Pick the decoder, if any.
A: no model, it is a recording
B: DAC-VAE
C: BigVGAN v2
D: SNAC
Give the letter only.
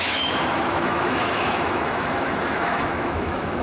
B